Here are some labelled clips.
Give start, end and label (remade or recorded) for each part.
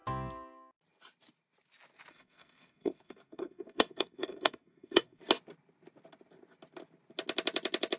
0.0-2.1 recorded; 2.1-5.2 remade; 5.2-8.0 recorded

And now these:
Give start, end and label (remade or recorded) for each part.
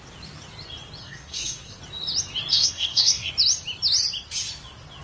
0.0-1.0 recorded; 1.0-1.8 remade; 1.8-2.5 recorded; 2.5-3.3 remade; 3.3-5.0 recorded